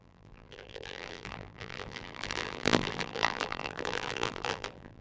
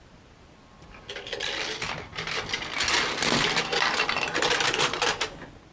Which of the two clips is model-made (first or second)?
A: first